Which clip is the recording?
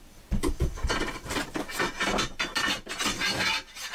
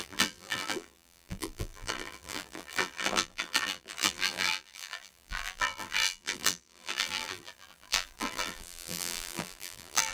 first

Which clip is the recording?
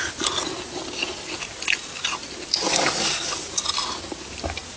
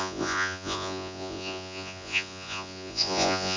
first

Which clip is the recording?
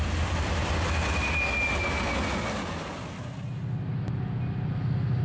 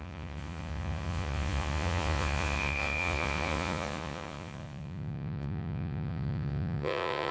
first